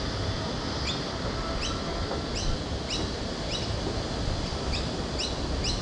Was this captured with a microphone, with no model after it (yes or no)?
yes